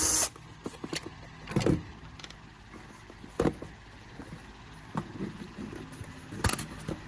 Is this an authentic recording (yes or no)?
yes